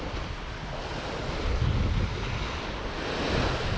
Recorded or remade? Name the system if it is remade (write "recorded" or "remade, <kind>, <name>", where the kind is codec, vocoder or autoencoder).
recorded